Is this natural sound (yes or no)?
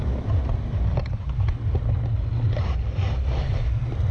yes